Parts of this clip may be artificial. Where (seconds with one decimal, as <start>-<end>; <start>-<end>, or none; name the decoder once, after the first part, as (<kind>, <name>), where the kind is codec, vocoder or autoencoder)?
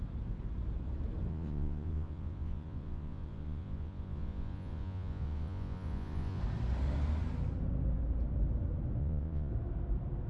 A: 1.3-6.4 (vocoder, Vocos); 9.0-9.5